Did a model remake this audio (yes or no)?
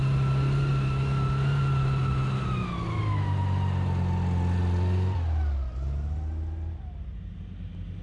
no